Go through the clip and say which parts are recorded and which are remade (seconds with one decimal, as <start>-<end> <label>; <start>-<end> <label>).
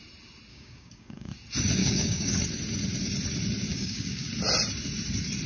0.0-0.5 recorded; 0.5-1.3 remade; 1.3-1.8 recorded; 1.8-2.3 remade; 2.3-3.7 recorded; 3.7-4.3 remade; 4.3-5.5 recorded